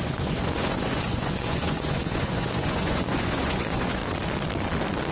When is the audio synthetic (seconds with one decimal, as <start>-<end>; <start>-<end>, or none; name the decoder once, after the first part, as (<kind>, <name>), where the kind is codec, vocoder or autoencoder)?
0.0-4.0 (vocoder, Vocos)